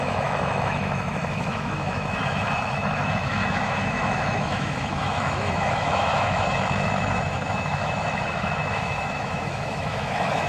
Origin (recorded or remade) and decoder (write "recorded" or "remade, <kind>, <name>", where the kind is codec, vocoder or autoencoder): remade, autoencoder, DAC-VAE